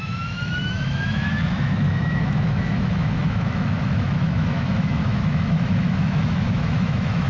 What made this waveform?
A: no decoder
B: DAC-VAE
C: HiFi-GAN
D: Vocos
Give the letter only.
B